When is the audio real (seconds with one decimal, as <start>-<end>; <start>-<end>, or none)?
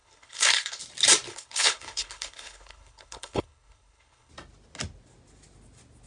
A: 0.8-1.3; 4.3-6.1